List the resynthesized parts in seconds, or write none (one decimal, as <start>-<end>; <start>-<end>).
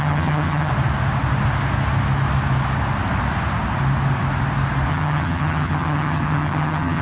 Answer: 0.0-0.7; 4.9-7.0